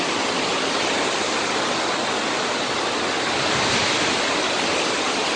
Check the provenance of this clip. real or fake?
real